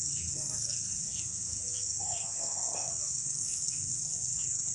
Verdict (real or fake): fake